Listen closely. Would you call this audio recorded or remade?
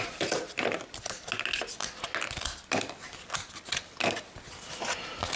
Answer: recorded